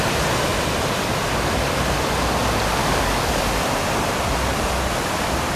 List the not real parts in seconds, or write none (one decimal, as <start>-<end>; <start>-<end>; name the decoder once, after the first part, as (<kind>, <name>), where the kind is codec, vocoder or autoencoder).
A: 2.8-3.4 (codec, DAC)